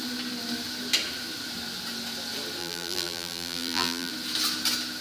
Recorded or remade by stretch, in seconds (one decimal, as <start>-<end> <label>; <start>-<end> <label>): 0.0-2.6 recorded; 2.6-4.1 remade; 4.1-5.0 recorded